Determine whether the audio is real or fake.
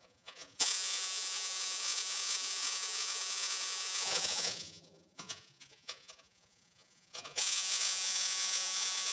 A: fake